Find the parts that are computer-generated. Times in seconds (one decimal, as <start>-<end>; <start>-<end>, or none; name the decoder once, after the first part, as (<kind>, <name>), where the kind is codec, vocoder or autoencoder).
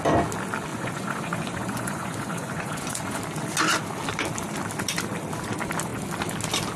0.7-3.2 (vocoder, Vocos)